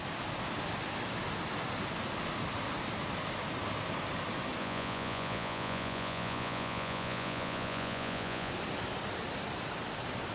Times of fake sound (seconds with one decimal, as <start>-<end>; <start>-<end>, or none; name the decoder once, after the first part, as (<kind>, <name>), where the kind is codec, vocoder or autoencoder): 4.6-8.5 (vocoder, Vocos)